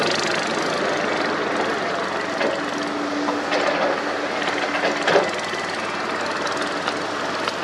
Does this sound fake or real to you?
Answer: real